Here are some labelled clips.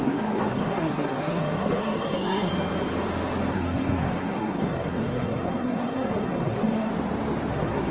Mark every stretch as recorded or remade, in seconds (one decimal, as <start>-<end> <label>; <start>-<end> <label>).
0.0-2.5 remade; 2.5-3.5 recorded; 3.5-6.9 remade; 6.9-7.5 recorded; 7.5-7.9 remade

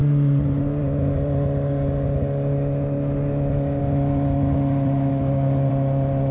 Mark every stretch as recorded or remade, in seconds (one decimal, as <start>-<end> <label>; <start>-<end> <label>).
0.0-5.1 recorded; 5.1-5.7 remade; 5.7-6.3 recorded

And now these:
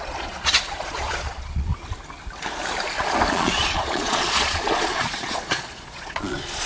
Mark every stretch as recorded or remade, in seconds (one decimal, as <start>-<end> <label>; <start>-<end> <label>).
0.0-1.7 remade; 1.7-3.3 recorded; 3.3-6.7 remade

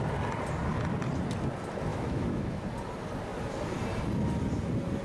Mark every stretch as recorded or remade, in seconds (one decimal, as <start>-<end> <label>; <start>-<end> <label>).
0.0-1.9 recorded; 1.9-2.6 remade; 2.6-5.0 recorded

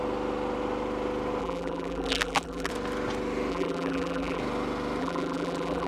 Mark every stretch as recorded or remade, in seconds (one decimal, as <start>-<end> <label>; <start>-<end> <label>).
0.0-1.4 recorded; 1.4-2.7 remade; 2.7-3.5 recorded; 3.5-4.4 remade; 4.4-5.0 recorded; 5.0-5.9 remade

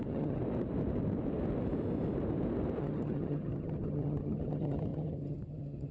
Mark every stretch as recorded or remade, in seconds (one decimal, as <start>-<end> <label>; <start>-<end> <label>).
0.0-0.4 remade; 0.4-2.8 recorded; 2.8-5.9 remade

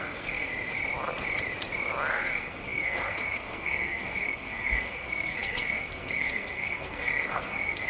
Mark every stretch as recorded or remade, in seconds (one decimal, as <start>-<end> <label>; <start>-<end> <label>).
0.0-0.5 remade; 0.5-2.1 recorded; 2.1-7.9 remade